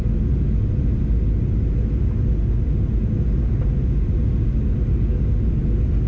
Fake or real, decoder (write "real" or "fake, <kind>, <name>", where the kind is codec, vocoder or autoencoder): real